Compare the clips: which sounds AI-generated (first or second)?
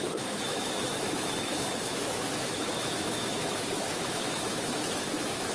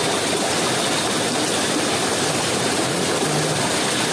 first